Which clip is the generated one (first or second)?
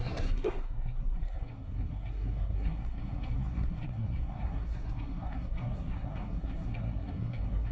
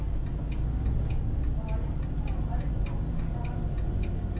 first